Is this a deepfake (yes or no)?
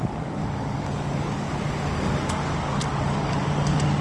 yes